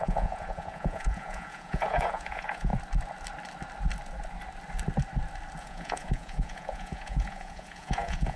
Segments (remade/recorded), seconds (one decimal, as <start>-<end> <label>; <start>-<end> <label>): 0.0-2.7 remade; 2.7-5.6 recorded; 5.6-8.4 remade